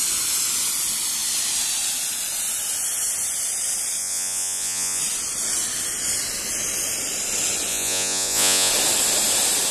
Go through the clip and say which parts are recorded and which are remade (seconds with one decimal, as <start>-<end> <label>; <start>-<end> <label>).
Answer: 0.0-4.0 recorded; 4.0-5.0 remade; 5.0-7.7 recorded; 7.7-8.7 remade; 8.7-9.7 recorded